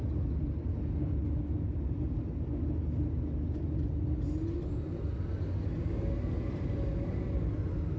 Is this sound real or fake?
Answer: real